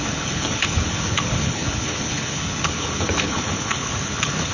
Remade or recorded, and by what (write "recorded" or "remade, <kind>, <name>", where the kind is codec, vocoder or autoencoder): remade, codec, HILCodec